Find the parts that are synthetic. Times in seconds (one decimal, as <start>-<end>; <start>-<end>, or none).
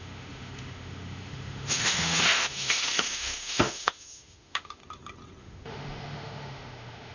0.0-4.8; 5.4-7.1